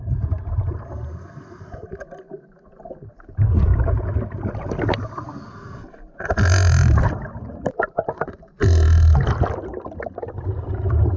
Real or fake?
real